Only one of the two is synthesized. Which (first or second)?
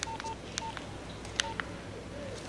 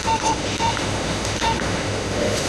second